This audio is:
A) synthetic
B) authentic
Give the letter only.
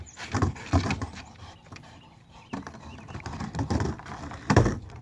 A